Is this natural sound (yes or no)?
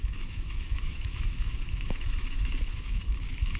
no